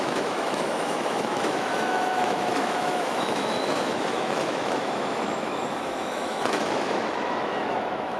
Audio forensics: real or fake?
fake